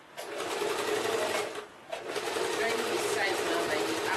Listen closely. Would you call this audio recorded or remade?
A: recorded